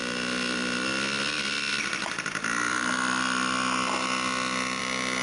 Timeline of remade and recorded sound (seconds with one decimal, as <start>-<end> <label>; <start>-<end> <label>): 0.0-5.2 recorded